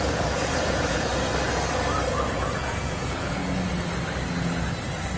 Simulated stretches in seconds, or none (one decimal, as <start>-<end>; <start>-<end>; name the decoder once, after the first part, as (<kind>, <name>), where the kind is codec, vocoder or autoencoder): 0.0-1.1 (vocoder, Vocos); 2.1-3.4